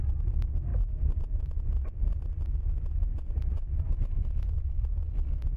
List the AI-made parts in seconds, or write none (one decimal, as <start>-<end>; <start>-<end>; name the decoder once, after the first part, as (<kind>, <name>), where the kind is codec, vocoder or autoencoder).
4.0-5.1 (vocoder, Vocos)